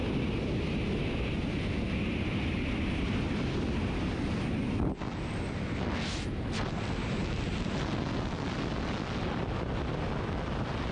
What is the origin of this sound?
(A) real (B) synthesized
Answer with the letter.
A